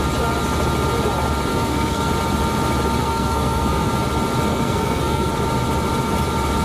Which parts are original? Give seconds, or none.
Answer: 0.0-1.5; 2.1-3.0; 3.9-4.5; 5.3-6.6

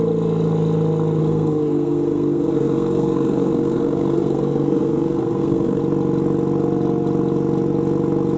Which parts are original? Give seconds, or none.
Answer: 0.0-1.2; 5.8-8.4

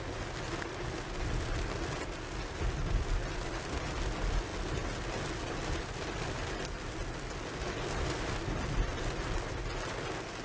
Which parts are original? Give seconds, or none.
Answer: 0.0-10.4